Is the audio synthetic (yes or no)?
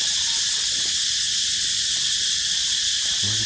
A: no